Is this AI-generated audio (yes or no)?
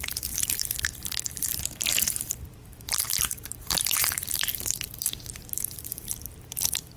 yes